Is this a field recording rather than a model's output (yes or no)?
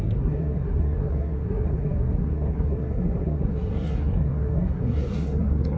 no